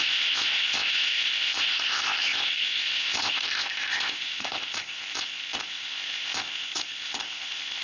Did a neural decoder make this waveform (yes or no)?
yes